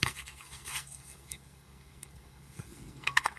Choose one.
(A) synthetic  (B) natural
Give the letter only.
A